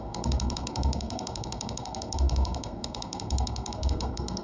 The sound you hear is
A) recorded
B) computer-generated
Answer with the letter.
B